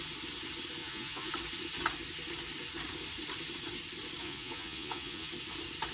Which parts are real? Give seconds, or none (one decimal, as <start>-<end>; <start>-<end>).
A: 0.0-0.8; 1.3-4.2; 5.3-5.9